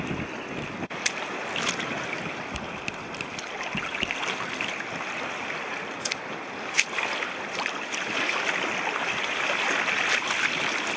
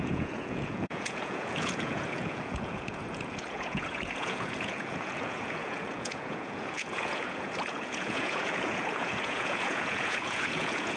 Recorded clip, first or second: first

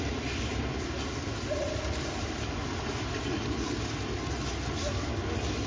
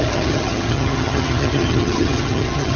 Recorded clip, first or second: first